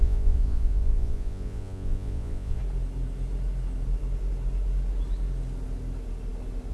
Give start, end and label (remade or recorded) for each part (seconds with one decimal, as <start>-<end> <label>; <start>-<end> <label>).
0.0-2.6 remade; 2.6-6.7 recorded